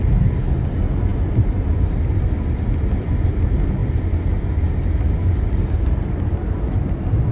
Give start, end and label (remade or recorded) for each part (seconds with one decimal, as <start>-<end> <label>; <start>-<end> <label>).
0.0-7.3 recorded